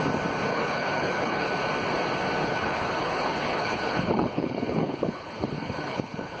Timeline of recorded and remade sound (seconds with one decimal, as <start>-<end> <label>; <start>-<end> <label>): 0.0-0.5 recorded; 0.5-1.5 remade; 1.5-2.4 recorded; 2.4-6.4 remade